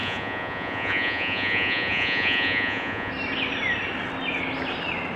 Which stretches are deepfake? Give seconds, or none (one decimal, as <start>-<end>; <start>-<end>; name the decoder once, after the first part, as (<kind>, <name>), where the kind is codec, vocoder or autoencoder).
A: 0.0-3.1 (vocoder, Vocos)